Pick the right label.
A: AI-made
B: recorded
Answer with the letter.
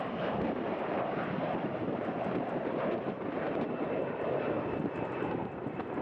A